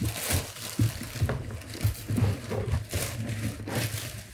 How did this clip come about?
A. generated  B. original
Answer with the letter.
B